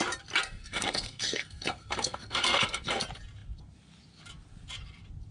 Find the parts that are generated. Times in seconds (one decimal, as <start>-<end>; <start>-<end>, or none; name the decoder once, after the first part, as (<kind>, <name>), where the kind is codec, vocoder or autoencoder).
0.4-3.0 (codec, SNAC)